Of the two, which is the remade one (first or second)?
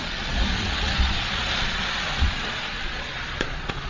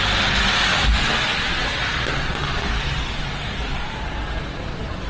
first